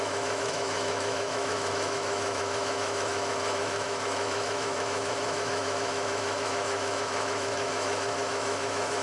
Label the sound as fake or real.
fake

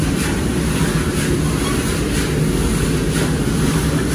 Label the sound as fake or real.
real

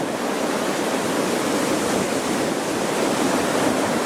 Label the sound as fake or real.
real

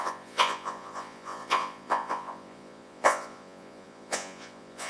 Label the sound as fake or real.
fake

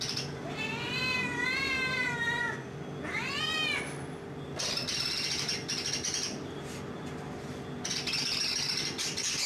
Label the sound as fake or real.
real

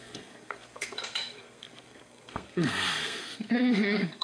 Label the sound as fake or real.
fake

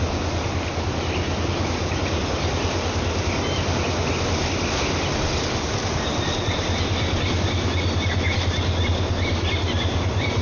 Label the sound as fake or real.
real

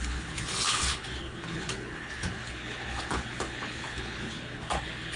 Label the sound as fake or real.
fake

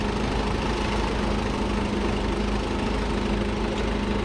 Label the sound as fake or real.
real